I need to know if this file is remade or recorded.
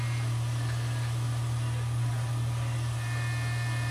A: recorded